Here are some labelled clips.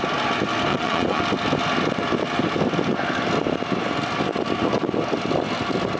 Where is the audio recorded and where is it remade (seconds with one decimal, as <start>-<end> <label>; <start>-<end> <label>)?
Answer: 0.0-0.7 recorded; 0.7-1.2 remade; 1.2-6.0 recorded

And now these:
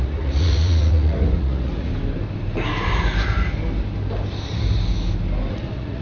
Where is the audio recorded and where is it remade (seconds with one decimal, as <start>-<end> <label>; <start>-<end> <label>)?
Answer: 0.0-1.9 remade; 1.9-5.5 recorded; 5.5-6.0 remade

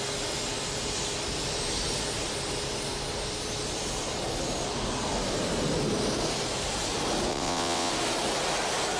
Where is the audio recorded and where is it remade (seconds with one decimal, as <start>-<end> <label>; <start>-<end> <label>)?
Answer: 0.0-7.3 recorded; 7.3-7.9 remade; 7.9-9.0 recorded

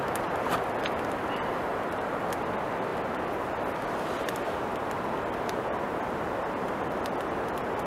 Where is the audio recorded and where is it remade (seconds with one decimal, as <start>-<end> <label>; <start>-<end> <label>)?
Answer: 0.0-2.9 remade; 2.9-7.5 recorded; 7.5-7.9 remade